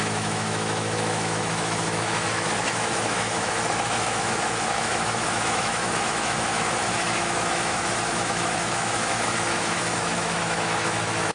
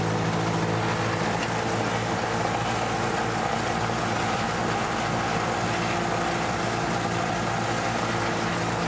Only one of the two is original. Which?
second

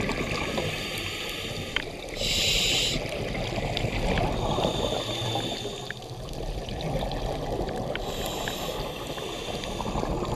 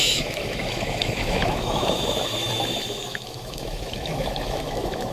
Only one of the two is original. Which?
first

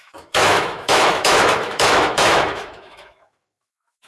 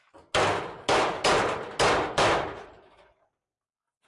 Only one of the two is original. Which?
second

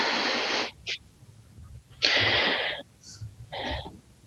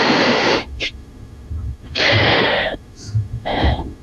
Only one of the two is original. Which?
first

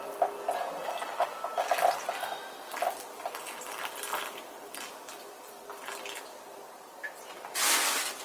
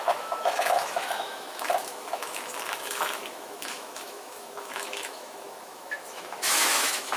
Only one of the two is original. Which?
first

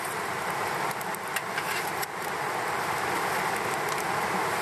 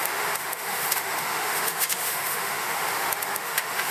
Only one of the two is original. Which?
first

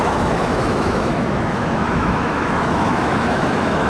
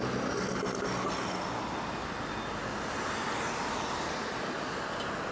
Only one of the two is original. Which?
second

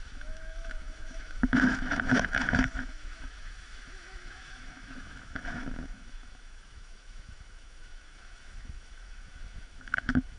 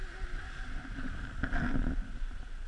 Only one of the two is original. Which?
second